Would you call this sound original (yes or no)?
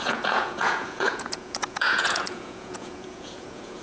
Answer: no